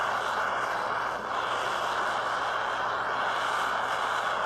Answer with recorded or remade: recorded